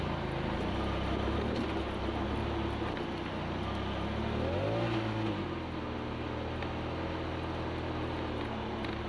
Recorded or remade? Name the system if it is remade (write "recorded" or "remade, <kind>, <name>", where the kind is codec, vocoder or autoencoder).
recorded